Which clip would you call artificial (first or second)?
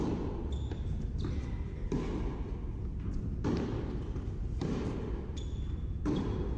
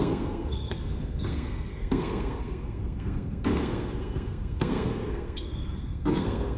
second